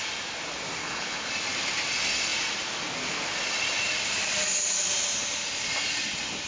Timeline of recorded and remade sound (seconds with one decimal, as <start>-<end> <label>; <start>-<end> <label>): 0.0-0.8 recorded; 0.8-1.3 remade; 1.3-6.5 recorded